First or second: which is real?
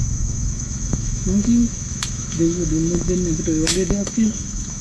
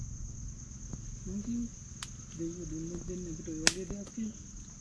second